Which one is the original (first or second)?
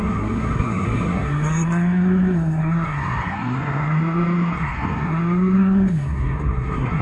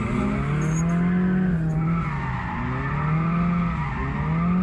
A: second